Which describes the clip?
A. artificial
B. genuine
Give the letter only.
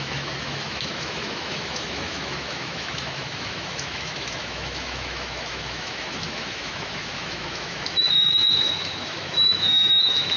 A